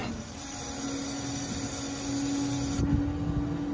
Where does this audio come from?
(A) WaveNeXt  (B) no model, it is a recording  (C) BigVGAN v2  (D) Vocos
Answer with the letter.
B